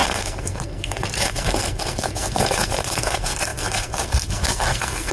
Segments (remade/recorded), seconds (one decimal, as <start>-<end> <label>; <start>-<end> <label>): 0.0-5.1 remade